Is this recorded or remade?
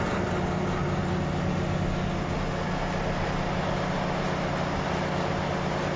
recorded